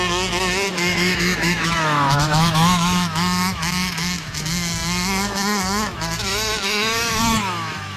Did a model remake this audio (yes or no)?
yes